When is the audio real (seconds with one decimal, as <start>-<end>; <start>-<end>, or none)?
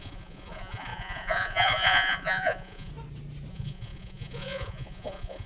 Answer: 2.9-3.5